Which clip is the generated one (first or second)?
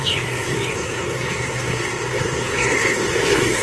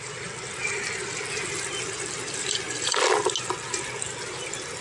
first